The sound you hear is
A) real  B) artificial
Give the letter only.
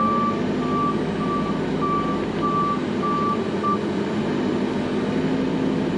A